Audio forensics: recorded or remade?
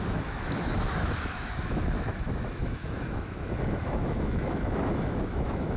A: remade